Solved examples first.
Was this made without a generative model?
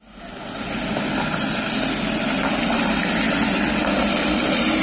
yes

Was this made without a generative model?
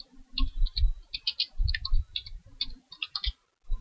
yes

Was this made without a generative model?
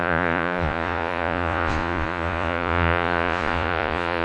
no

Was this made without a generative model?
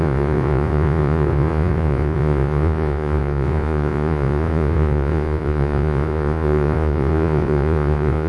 no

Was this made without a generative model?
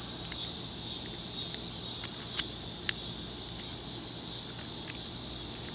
yes